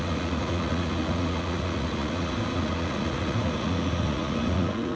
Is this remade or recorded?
remade